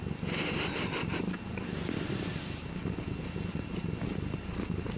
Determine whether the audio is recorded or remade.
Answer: recorded